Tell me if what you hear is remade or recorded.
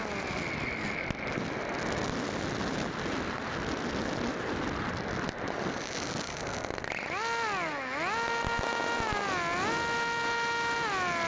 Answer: recorded